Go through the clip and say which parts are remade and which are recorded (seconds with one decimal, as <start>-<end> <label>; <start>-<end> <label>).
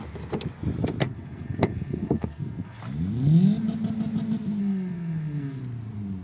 0.0-1.0 recorded; 1.0-2.8 remade; 2.8-4.6 recorded; 4.6-5.6 remade; 5.6-6.2 recorded